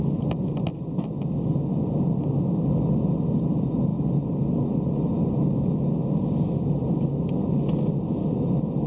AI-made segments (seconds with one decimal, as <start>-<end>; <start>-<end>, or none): none

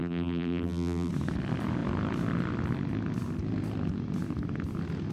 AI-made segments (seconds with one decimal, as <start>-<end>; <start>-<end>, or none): 0.0-1.1